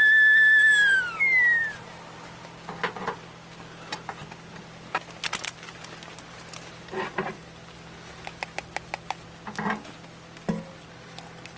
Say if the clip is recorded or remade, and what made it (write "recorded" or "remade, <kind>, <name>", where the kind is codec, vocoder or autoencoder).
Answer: recorded